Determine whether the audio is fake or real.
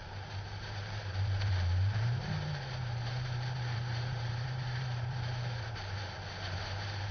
fake